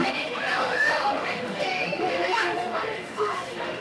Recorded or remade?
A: remade